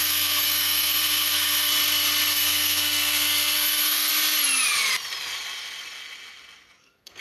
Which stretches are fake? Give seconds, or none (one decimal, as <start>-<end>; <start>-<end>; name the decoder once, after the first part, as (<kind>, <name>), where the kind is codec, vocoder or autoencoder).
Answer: 0.0-1.7 (codec, SNAC); 2.3-4.1; 6.8-7.2